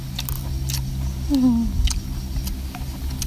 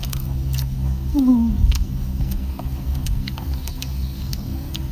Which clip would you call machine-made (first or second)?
second